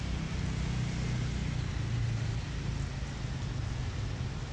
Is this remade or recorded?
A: recorded